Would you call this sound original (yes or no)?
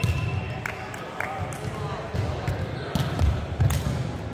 yes